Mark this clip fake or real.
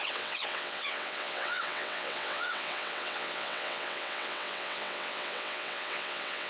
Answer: fake